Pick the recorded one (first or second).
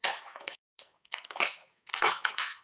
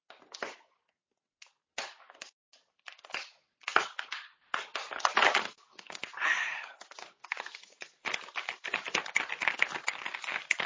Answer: second